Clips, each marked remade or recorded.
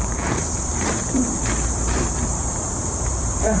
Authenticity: remade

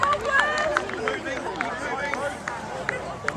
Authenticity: remade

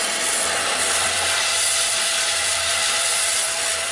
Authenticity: remade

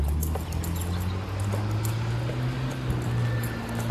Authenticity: recorded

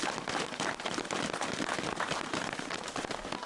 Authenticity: remade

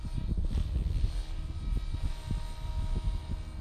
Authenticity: recorded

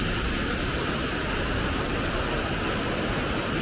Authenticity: recorded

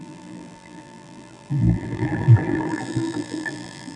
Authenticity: remade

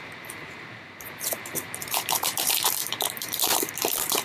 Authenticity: remade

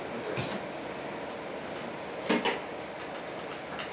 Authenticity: recorded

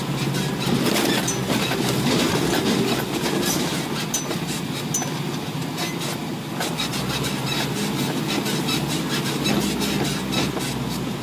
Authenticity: recorded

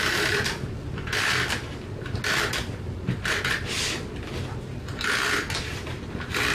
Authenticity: recorded